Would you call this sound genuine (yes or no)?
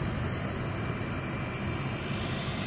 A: yes